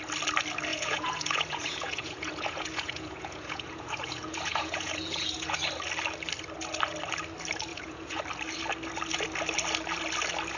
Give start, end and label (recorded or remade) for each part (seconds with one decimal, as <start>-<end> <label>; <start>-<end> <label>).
0.0-0.7 recorded; 0.7-5.6 remade; 5.6-7.7 recorded; 7.7-8.2 remade; 8.2-10.6 recorded